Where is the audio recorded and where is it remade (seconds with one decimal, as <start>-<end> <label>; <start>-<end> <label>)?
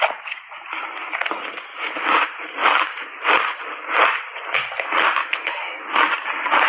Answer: 0.0-1.7 recorded; 1.7-2.2 remade; 2.2-2.6 recorded; 2.6-3.2 remade; 3.2-5.2 recorded; 5.2-5.8 remade; 5.8-6.7 recorded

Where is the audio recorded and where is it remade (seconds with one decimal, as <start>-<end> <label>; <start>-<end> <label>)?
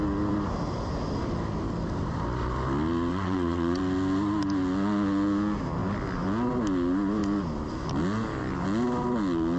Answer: 0.0-3.1 recorded; 3.1-3.8 remade; 3.8-9.6 recorded